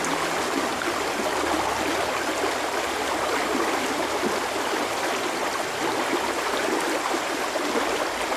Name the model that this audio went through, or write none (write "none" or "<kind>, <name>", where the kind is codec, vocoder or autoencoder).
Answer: none